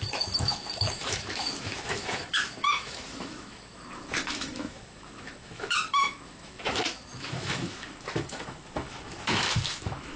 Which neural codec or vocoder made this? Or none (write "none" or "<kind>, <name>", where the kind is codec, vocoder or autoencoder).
autoencoder, DAC-VAE